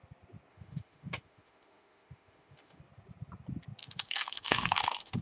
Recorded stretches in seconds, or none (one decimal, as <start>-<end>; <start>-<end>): 0.0-0.5; 2.8-3.8